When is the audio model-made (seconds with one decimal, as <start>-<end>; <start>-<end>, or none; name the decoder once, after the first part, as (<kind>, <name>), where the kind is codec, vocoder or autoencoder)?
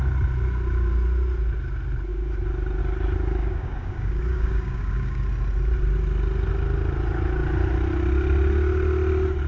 3.4-5.2 (codec, DAC)